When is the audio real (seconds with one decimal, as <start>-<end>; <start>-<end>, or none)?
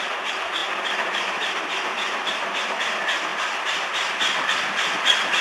0.0-0.6; 2.8-3.3; 4.1-5.4